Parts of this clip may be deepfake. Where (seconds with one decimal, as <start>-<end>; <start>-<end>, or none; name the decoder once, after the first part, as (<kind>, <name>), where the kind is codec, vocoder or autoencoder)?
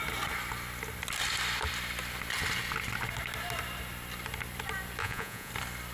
5.0-5.5 (vocoder, Vocos)